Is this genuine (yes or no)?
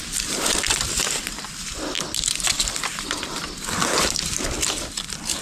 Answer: no